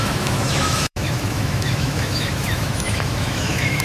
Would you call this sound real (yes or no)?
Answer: no